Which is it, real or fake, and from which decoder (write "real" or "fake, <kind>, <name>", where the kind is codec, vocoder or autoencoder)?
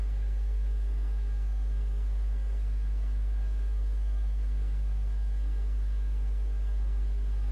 fake, codec, SNAC